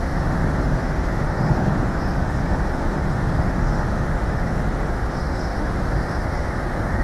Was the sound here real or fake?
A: fake